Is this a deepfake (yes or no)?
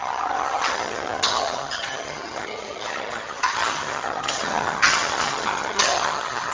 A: yes